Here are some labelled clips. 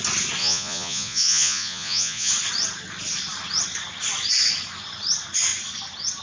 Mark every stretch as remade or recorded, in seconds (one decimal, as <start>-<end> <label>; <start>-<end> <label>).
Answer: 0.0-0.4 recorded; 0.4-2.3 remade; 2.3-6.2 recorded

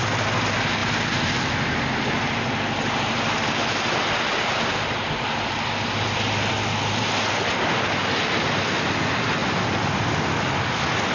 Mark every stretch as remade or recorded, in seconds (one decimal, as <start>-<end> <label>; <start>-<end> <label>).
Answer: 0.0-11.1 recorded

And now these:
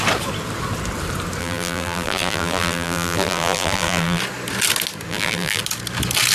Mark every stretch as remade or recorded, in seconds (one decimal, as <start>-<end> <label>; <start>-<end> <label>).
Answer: 0.0-1.4 recorded; 1.4-4.2 remade; 4.2-5.1 recorded; 5.1-5.6 remade; 5.6-6.3 recorded

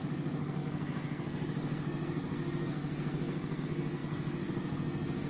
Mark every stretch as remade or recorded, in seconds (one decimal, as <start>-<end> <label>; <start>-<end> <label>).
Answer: 0.0-5.3 remade